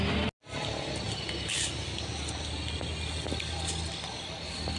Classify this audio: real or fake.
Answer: real